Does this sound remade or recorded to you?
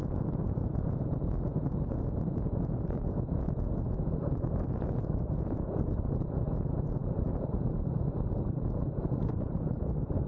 remade